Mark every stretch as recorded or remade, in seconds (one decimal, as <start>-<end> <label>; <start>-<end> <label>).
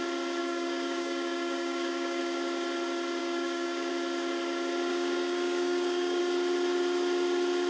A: 0.0-0.4 recorded; 0.4-2.2 remade; 2.2-3.2 recorded; 3.2-3.9 remade; 3.9-4.9 recorded; 4.9-6.2 remade; 6.2-7.7 recorded